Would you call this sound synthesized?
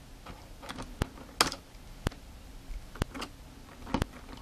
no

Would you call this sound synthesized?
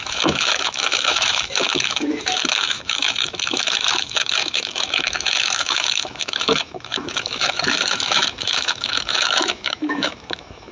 yes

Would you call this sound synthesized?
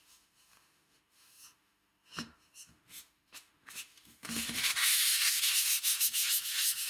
yes